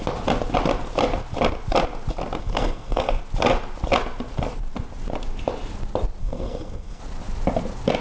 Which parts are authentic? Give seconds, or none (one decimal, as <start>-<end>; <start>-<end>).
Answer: 0.0-2.4; 3.2-6.2; 7.0-8.0